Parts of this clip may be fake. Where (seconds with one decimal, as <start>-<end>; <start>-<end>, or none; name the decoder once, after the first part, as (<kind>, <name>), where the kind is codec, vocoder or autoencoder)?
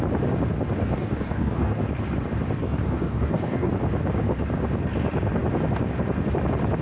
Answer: 0.8-1.8 (codec, DAC); 2.6-3.7